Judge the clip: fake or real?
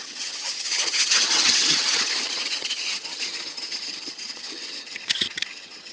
fake